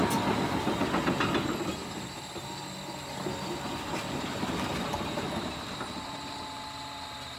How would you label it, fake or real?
real